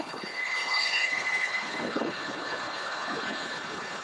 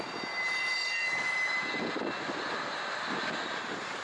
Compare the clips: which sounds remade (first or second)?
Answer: first